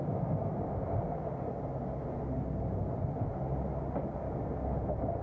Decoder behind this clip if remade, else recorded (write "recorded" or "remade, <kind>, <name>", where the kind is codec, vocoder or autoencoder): recorded